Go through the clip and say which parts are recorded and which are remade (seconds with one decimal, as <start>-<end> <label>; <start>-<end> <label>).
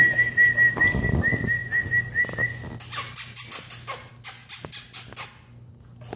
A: 0.0-6.2 recorded